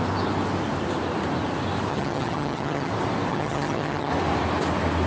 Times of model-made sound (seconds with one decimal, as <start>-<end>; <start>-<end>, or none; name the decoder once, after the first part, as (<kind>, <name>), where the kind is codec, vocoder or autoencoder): 1.9-2.9 (vocoder, HiFi-GAN); 3.3-4.1